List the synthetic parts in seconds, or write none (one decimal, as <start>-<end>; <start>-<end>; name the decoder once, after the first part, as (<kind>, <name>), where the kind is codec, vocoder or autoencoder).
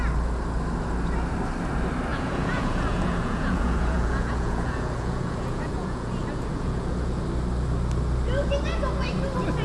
2.1-7.2 (vocoder, Vocos)